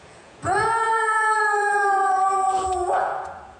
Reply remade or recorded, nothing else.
remade